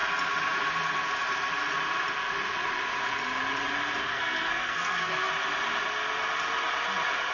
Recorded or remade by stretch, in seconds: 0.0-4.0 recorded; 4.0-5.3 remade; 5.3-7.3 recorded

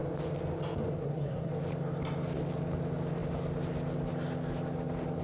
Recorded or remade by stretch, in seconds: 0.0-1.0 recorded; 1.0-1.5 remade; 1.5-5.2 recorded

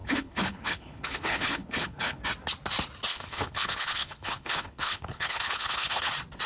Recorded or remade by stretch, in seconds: 0.0-2.2 remade; 2.2-3.1 recorded; 3.1-6.1 remade; 6.1-6.5 recorded

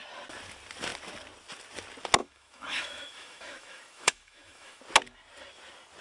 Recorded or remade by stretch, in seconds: 0.0-2.2 recorded; 2.2-4.8 remade; 4.8-6.0 recorded

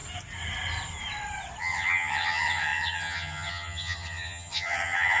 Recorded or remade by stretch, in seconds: 0.0-1.6 recorded; 1.6-5.2 remade

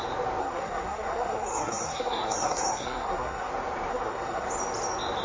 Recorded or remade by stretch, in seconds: 0.0-0.4 recorded; 0.4-3.5 remade; 3.5-3.9 recorded; 3.9-4.5 remade; 4.5-5.2 recorded

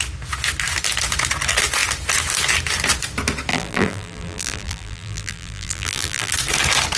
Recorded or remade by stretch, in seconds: 0.0-3.5 recorded; 3.5-6.3 remade; 6.3-7.0 recorded

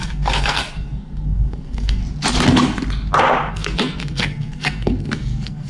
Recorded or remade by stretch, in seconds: 0.0-2.0 remade; 2.0-3.5 recorded; 3.5-5.7 remade